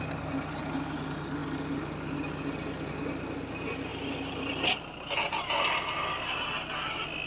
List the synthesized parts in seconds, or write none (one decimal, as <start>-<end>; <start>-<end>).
3.9-4.8